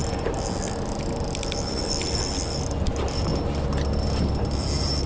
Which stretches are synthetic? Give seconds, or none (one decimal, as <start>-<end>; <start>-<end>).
none